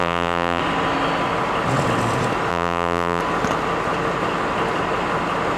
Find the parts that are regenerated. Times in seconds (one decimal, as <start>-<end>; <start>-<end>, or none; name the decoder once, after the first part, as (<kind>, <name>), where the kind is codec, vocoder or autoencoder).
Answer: 0.0-0.6 (vocoder, BigVGAN v2); 2.5-3.2